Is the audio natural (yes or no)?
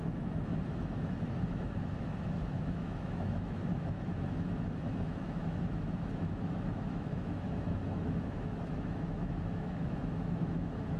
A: no